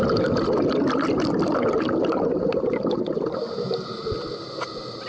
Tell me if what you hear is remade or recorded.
recorded